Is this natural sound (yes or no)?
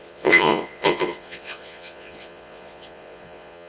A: no